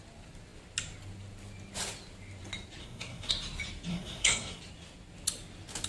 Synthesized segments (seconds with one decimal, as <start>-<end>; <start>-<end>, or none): 2.8-3.3; 3.9-4.6